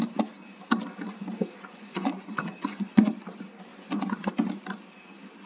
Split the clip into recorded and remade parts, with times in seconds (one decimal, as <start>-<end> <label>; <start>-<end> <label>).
0.0-1.7 recorded; 1.7-3.1 remade; 3.1-3.7 recorded; 3.7-4.3 remade; 4.3-5.5 recorded

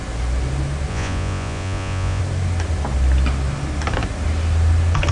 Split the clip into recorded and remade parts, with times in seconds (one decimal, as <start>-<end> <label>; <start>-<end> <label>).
0.0-0.9 recorded; 0.9-2.2 remade; 2.2-5.1 recorded